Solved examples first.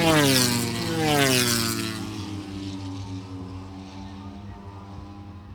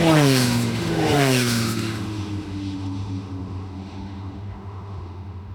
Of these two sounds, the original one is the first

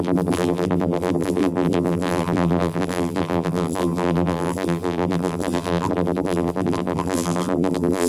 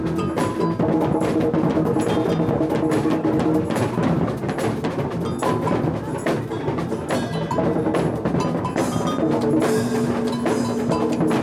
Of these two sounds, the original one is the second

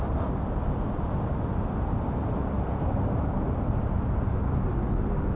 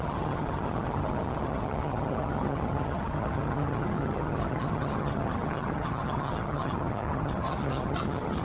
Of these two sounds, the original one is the first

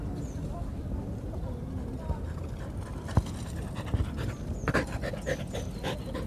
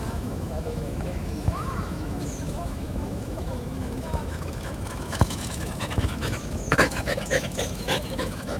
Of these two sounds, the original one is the first